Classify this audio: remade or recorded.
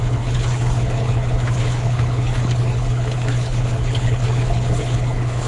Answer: remade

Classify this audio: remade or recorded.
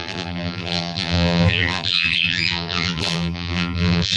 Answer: remade